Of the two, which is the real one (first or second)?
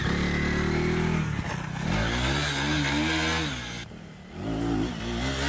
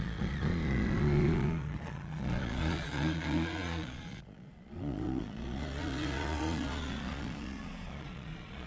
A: first